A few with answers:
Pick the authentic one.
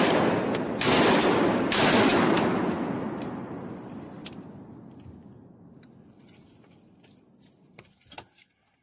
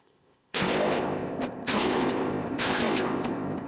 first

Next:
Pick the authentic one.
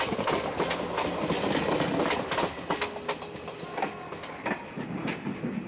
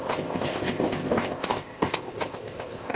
first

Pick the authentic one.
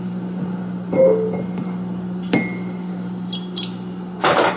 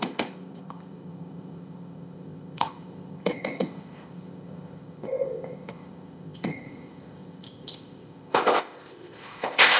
first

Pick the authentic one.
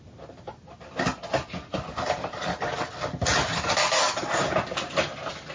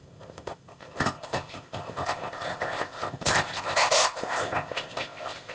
first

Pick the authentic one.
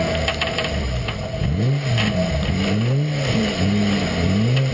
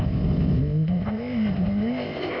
first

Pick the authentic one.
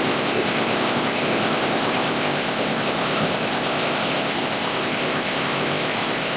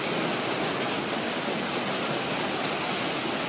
second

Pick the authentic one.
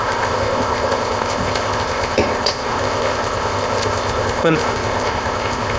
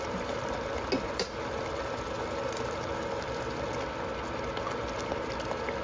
second